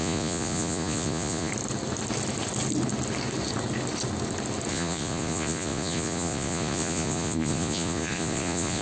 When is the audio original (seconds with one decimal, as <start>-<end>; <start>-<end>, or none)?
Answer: 1.5-4.7